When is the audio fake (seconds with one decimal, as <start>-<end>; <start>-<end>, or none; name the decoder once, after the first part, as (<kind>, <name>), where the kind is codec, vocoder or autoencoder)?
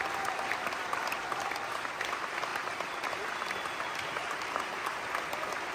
2.5-3.1 (vocoder, BigVGAN v2); 4.2-4.8